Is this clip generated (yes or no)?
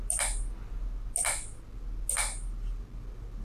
no